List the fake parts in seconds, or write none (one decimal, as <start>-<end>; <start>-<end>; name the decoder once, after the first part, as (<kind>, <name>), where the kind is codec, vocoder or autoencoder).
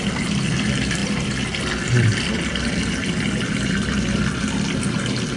1.0-4.2 (vocoder, BigVGAN v2)